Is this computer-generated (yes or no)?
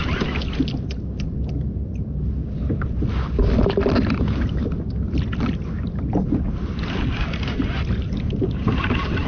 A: no